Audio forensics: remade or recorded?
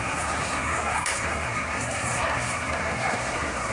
remade